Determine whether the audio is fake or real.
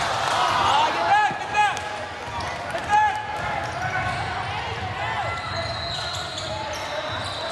real